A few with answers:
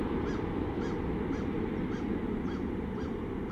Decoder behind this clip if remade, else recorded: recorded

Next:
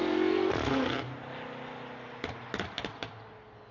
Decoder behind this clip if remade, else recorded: recorded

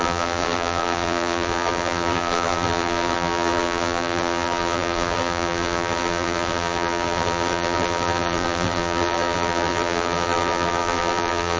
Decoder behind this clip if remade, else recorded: remade, vocoder, BigVGAN v2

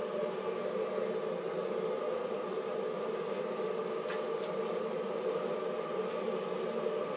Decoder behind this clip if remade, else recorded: recorded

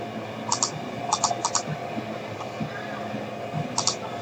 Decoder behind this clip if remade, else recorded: recorded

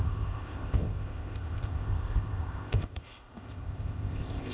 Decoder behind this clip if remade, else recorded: remade, codec, ZipCodec